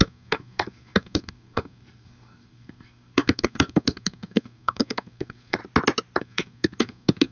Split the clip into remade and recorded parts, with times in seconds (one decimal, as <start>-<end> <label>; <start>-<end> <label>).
0.0-5.6 remade; 5.6-6.2 recorded; 6.2-7.3 remade

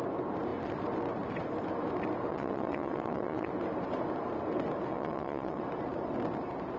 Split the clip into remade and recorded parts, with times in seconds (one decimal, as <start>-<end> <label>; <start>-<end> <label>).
0.0-2.3 recorded; 2.3-3.5 remade; 3.5-4.9 recorded; 4.9-5.6 remade; 5.6-6.8 recorded

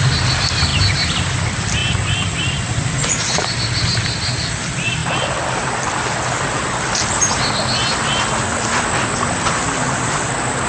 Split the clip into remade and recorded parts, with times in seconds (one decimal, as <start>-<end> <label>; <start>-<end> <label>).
0.0-10.7 recorded

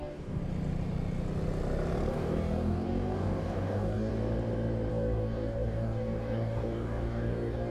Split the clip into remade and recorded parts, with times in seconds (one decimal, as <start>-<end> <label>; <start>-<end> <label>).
0.0-0.4 remade; 0.4-2.1 recorded; 2.1-4.1 remade; 4.1-4.9 recorded; 4.9-7.7 remade